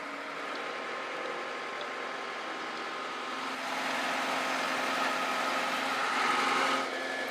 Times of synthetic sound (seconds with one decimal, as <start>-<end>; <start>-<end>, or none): none